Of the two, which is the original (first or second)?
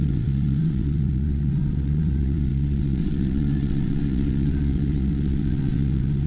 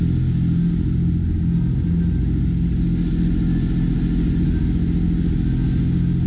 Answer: second